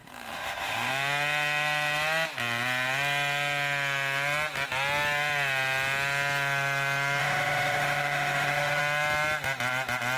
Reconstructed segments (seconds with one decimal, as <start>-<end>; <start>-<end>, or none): 0.0-0.9; 7.2-8.8